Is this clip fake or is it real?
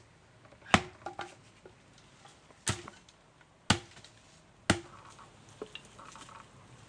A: real